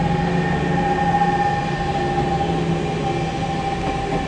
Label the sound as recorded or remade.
recorded